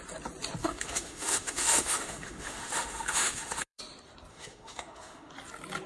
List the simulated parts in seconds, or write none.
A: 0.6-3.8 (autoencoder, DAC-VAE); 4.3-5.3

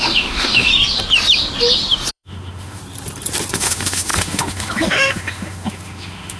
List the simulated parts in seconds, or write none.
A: 0.0-0.7 (autoencoder, DAC-VAE); 2.1-2.8; 3.5-6.4

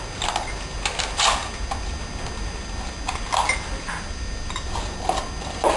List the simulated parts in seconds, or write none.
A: none